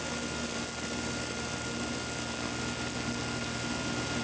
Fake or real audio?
real